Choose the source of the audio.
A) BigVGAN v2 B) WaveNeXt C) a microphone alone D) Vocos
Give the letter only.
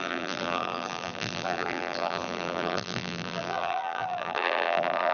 A